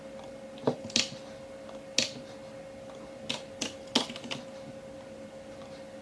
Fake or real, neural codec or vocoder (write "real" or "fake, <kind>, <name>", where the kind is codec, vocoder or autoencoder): real